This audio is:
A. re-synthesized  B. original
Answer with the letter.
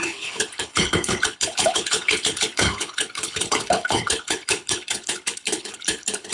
A